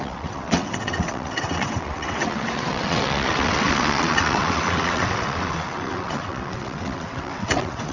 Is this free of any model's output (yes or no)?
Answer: no